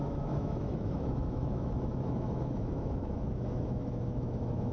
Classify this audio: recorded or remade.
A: remade